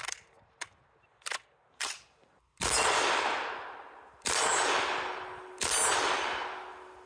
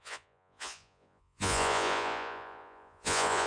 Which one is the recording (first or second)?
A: first